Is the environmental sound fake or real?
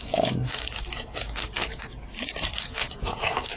fake